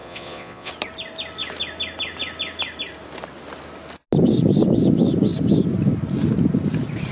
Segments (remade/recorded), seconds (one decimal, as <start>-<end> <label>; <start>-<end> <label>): 0.0-0.7 remade; 0.7-7.1 recorded